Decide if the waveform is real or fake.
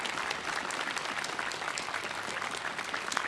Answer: real